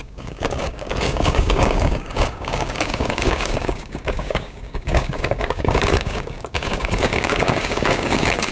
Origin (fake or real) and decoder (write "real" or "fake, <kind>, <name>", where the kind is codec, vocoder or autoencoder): fake, codec, DAC